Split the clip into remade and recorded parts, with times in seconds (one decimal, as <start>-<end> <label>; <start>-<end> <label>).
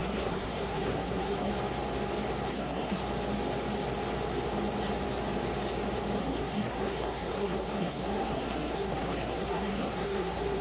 0.0-1.5 remade; 1.5-2.5 recorded; 2.5-3.0 remade; 3.0-6.2 recorded; 6.2-10.6 remade